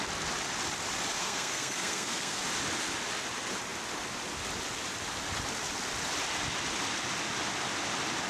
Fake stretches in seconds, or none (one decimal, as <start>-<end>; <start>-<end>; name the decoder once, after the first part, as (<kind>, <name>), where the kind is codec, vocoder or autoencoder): 1.2-2.4 (codec, SNAC)